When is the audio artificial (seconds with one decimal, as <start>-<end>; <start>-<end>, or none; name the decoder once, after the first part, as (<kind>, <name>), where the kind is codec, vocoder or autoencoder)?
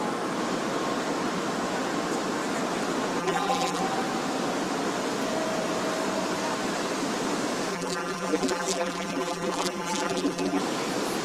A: 3.2-3.8 (vocoder, BigVGAN v2); 7.7-10.6